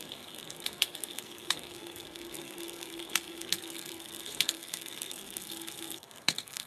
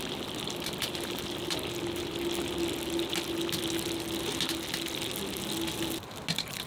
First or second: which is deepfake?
first